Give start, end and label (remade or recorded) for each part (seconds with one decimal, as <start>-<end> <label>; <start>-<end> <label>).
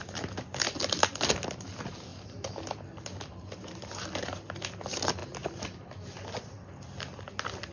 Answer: 0.0-7.7 recorded